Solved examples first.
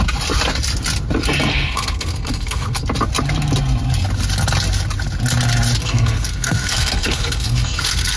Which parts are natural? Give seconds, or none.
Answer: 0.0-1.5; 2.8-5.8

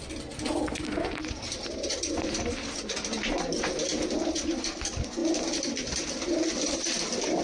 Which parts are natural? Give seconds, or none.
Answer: 0.0-5.2

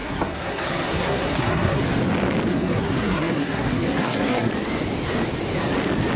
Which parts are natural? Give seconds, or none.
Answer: 1.8-2.5; 4.5-6.2

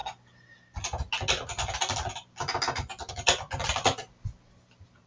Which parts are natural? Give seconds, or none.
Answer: 0.0-5.1

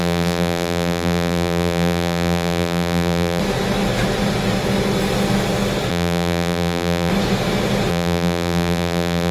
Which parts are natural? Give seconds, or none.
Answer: 3.4-5.9; 7.1-7.9

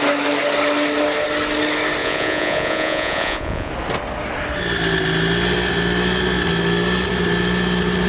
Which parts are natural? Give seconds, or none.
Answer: 0.0-2.0; 3.7-8.1

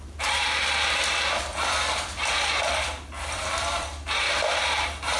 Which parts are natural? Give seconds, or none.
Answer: 0.0-1.5; 4.6-5.2